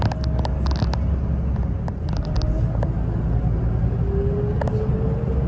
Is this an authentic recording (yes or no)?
yes